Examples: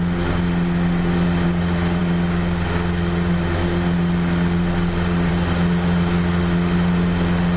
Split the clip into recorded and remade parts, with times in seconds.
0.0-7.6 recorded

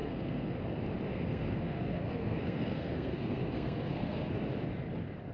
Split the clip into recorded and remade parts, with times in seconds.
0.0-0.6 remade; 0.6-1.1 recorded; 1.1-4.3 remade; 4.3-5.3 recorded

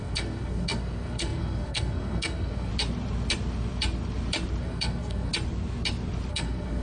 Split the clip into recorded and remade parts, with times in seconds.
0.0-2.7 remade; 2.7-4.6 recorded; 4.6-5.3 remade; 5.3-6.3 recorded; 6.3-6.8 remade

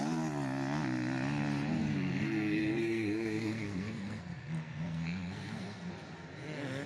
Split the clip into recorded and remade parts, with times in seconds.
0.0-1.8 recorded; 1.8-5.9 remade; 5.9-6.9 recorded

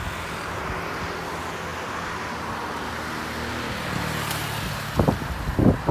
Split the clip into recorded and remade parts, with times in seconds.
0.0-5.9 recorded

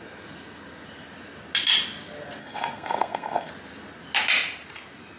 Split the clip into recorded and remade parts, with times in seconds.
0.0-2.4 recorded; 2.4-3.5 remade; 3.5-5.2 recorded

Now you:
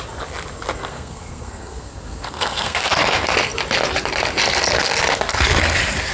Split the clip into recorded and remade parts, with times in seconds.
0.0-0.9 recorded; 0.9-2.9 remade; 2.9-6.1 recorded

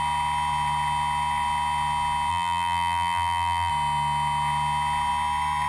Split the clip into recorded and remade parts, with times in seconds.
0.0-2.3 recorded; 2.3-3.7 remade; 3.7-5.7 recorded